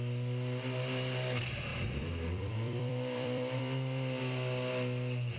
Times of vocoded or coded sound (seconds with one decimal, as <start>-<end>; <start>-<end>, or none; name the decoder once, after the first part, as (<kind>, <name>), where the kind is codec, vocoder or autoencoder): 1.7-4.2 (vocoder, BigVGAN v2)